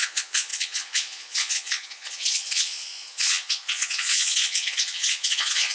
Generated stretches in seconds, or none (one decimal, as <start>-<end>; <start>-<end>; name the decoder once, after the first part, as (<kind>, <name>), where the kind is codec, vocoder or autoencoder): 0.0-5.7 (vocoder, Vocos)